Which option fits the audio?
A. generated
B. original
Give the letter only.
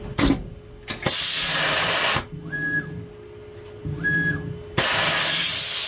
B